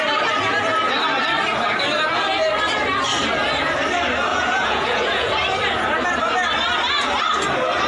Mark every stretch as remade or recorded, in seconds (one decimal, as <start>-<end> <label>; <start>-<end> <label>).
0.0-4.3 recorded; 4.3-5.3 remade; 5.3-7.9 recorded